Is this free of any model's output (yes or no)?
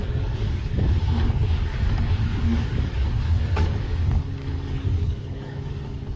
no